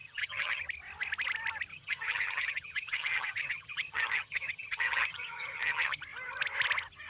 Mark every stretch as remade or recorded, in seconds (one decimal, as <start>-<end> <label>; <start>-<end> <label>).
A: 0.0-0.6 remade; 0.6-1.7 recorded; 1.7-6.0 remade; 6.0-7.1 recorded